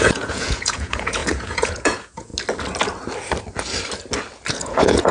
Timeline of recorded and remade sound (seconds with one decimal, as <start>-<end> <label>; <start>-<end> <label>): 0.0-2.3 remade; 2.3-4.5 recorded; 4.5-5.1 remade

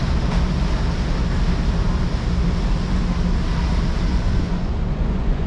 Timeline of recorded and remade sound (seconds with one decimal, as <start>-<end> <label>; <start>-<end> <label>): 0.0-4.1 recorded; 4.1-5.5 remade

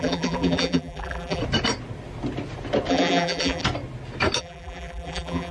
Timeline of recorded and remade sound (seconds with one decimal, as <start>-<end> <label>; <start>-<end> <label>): 0.0-1.4 remade; 1.4-2.9 recorded; 2.9-3.6 remade; 3.6-4.4 recorded; 4.4-5.5 remade

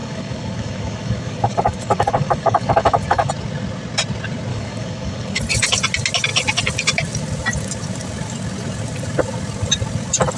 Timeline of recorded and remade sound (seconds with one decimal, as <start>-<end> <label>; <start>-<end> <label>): 0.0-3.3 remade; 3.3-4.5 recorded; 4.5-5.4 remade; 5.4-10.4 recorded

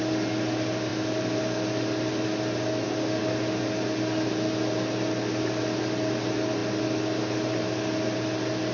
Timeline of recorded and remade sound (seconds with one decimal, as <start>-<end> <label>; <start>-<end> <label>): 0.0-8.7 recorded

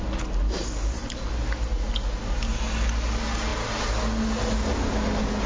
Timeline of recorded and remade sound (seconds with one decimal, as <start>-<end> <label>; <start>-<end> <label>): 0.0-5.5 recorded

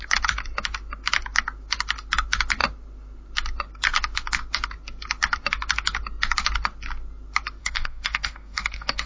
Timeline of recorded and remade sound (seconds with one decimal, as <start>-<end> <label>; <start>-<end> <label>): 0.0-7.6 recorded; 7.6-9.1 remade